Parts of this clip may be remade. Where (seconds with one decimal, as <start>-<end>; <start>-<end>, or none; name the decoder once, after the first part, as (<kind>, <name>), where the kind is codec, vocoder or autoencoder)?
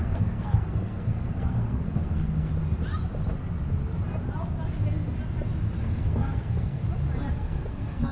0.0-2.5 (codec, SNAC); 5.8-6.8; 7.3-8.1